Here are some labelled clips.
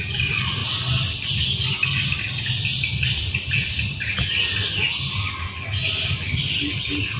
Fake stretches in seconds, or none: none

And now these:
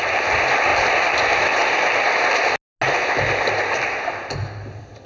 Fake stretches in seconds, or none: none

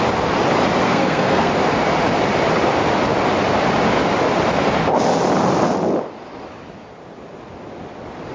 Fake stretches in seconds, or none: 0.8-1.5 (codec, SNAC)

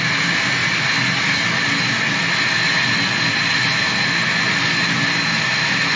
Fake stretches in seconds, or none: none

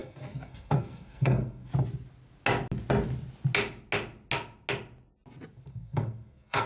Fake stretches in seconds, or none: 0.0-1.7 (codec, SNAC); 5.7-6.7

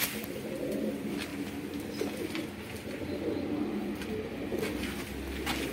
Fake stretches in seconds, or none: none

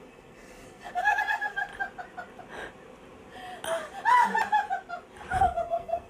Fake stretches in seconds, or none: 0.0-1.7 (codec, SNAC); 5.4-6.1

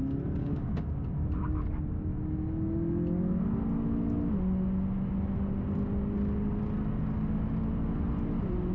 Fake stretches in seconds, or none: 0.4-1.0 (codec, DAC)